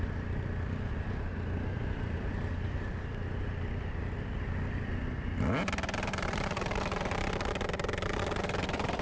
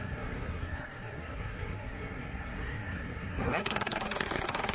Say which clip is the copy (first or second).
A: second